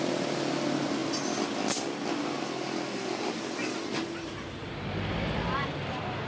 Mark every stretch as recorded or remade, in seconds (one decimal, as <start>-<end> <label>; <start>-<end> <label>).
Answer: 0.0-6.3 recorded